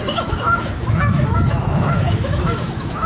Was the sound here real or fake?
fake